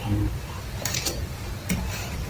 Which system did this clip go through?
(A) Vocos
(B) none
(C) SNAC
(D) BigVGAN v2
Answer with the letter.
B